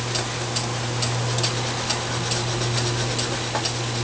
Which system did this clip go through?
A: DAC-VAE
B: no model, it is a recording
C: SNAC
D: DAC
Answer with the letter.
B